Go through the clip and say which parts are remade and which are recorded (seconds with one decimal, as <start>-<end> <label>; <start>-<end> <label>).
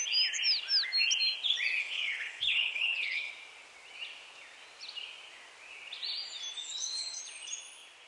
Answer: 0.0-1.8 recorded; 1.8-3.3 remade; 3.3-6.6 recorded; 6.6-7.2 remade; 7.2-8.1 recorded